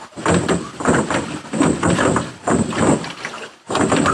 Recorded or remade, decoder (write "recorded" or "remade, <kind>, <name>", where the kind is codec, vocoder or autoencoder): recorded